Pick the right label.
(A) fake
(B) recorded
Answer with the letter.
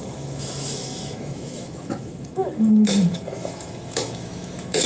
A